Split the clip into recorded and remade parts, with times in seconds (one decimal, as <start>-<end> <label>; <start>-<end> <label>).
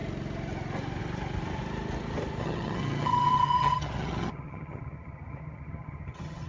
0.0-2.4 recorded; 2.4-6.5 remade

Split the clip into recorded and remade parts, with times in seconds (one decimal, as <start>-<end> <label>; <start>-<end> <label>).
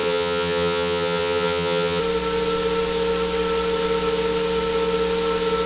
0.0-2.0 remade; 2.0-5.7 recorded